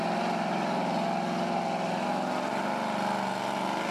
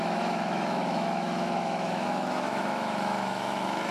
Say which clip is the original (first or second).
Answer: first